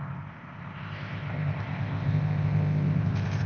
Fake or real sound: fake